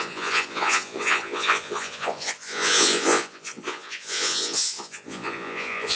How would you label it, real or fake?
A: fake